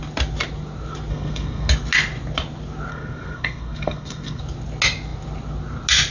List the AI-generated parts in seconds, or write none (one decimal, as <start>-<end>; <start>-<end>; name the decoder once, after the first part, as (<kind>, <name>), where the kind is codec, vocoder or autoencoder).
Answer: 1.1-1.7 (codec, SNAC); 2.9-4.4